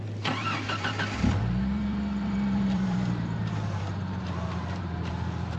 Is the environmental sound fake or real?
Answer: fake